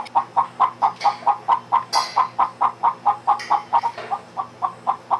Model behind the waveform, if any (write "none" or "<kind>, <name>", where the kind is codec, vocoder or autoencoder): none